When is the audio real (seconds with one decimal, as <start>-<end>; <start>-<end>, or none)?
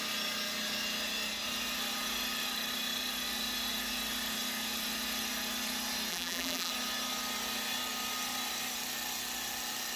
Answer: 0.0-6.1; 6.7-10.0